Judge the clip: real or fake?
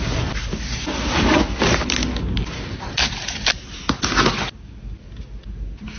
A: real